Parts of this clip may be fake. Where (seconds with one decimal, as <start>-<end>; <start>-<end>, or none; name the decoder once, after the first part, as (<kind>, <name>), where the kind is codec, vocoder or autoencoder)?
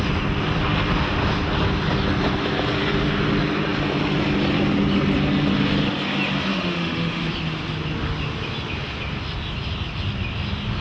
6.5-7.2 (autoencoder, DAC-VAE)